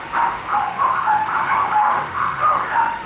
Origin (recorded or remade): remade